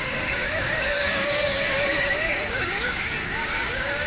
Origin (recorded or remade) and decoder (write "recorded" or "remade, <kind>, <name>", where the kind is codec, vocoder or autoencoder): remade, codec, DAC